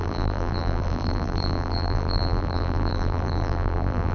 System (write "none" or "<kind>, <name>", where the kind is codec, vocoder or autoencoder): vocoder, BigVGAN v2